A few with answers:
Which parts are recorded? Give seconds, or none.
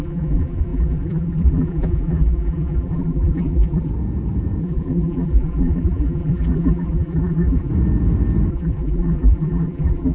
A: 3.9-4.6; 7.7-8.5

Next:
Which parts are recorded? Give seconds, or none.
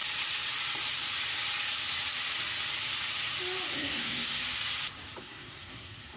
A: 0.0-3.7; 4.4-5.2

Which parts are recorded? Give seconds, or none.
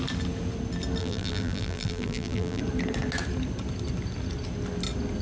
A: 0.0-1.0; 2.6-5.2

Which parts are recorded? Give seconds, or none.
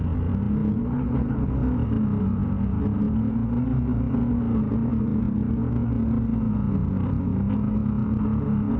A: 0.0-0.8; 1.5-8.8